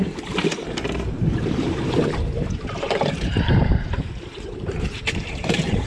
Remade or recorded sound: remade